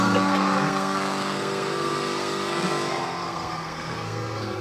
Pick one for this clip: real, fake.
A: fake